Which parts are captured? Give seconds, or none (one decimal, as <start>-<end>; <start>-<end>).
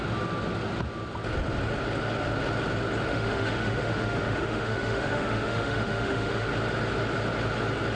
0.0-3.1; 6.5-7.9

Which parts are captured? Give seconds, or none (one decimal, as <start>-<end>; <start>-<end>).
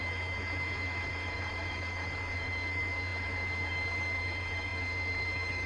none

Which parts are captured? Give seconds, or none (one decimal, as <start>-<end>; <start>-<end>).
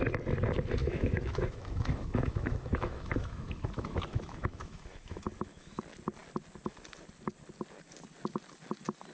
0.0-0.8; 5.8-9.1